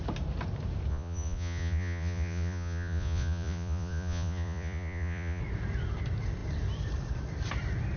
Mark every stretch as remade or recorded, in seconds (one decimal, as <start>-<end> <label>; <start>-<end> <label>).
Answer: 0.0-0.9 recorded; 0.9-5.4 remade; 5.4-8.0 recorded